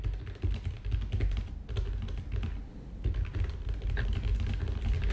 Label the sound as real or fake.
real